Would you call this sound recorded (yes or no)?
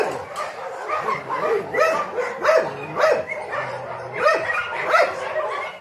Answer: yes